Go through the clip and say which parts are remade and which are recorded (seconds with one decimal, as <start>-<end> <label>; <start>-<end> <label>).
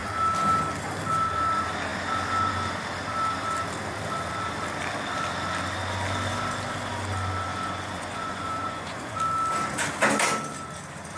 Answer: 0.0-7.5 recorded; 7.5-9.2 remade; 9.2-11.2 recorded